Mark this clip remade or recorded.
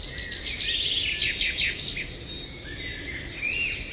recorded